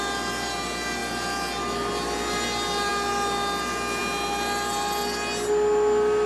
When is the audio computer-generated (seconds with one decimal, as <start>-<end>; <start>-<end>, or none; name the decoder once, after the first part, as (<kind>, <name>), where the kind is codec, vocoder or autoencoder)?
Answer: none